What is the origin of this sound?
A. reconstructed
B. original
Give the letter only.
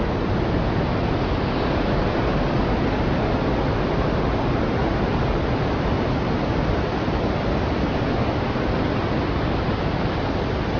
B